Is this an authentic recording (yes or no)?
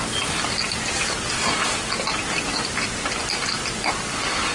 yes